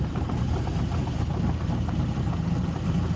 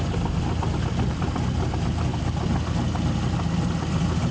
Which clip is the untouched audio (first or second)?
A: second